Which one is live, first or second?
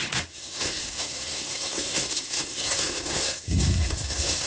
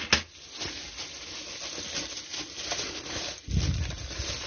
second